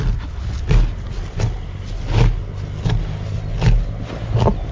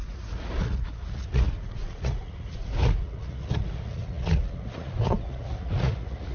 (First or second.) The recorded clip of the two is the first